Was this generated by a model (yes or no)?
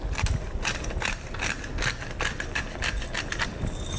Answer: no